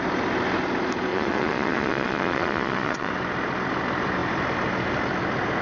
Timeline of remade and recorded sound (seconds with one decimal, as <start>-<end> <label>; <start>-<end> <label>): 0.0-1.1 recorded; 1.1-3.1 remade; 3.1-5.6 recorded